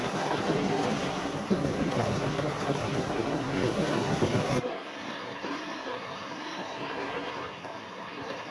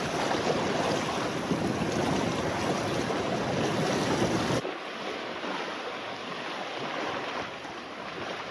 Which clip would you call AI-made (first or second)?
first